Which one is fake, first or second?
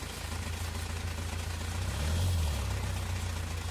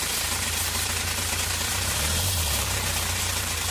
second